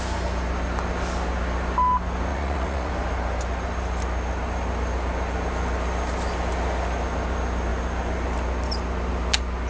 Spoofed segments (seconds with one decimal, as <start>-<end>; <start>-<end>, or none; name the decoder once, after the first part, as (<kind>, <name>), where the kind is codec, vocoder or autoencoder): 2.3-2.9 (vocoder, Vocos)